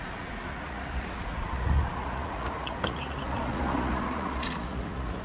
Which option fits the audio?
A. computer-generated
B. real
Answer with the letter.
A